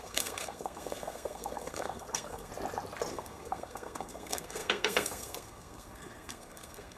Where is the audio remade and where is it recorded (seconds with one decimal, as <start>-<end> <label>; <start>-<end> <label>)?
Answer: 0.0-2.5 remade; 2.5-3.1 recorded; 3.1-7.0 remade